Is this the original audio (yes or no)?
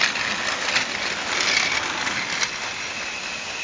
yes